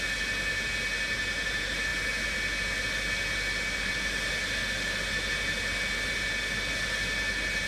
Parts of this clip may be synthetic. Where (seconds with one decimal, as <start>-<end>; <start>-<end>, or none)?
none